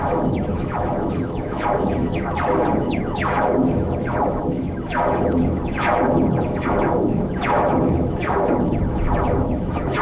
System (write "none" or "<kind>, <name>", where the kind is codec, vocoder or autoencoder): autoencoder, DAC-VAE